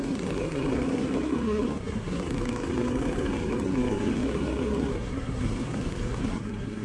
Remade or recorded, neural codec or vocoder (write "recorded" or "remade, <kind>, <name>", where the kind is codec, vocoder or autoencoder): remade, codec, SNAC